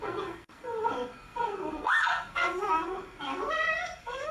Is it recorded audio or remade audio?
remade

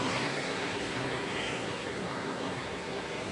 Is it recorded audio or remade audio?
remade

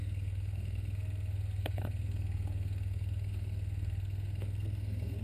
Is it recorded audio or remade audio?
remade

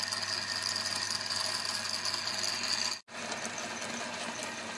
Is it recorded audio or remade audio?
recorded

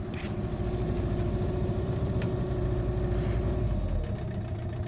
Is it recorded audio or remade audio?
recorded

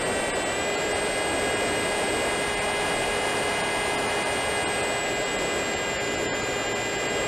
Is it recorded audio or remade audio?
recorded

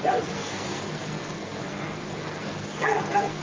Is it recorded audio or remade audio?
remade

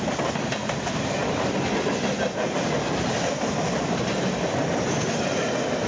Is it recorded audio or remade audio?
recorded